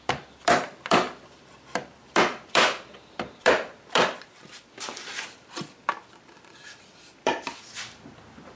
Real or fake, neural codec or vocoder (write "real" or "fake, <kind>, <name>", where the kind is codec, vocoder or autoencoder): fake, vocoder, BigVGAN v2